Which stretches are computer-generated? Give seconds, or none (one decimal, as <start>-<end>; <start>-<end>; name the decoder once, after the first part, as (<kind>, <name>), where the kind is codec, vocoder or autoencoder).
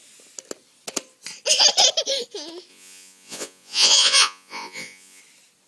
2.7-5.2 (vocoder, Vocos)